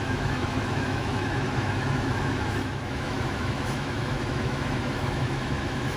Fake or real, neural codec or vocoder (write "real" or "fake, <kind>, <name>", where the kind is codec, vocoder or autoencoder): fake, autoencoder, DAC-VAE